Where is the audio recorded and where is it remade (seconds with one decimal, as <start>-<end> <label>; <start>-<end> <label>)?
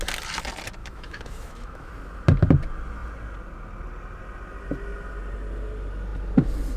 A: 0.0-0.8 recorded; 0.8-1.9 remade; 1.9-6.8 recorded